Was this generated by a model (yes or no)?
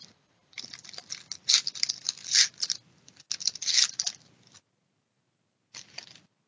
no